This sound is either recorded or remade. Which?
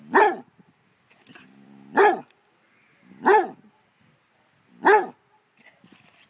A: recorded